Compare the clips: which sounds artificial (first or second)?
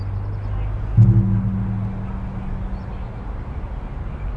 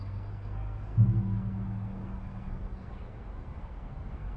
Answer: second